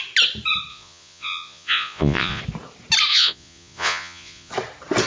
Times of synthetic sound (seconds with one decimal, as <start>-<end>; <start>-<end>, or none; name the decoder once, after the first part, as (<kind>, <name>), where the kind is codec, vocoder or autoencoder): 0.7-2.4 (vocoder, Vocos); 3.1-4.5